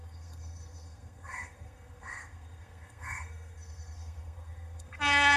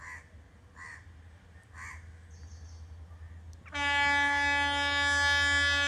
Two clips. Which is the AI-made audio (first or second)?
first